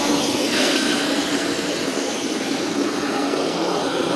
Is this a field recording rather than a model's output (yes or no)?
no